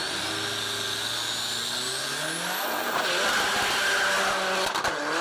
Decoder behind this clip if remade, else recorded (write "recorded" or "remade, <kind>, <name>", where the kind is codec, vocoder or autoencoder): recorded